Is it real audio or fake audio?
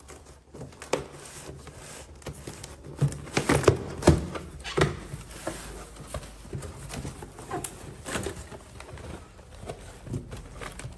real